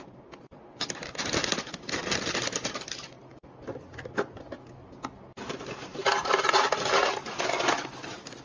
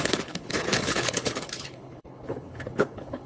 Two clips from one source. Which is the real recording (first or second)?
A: first